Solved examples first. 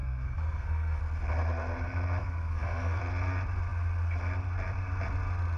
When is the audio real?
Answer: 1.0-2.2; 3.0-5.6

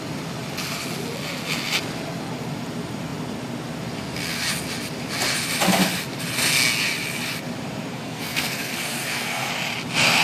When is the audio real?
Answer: 0.0-7.9; 9.5-10.2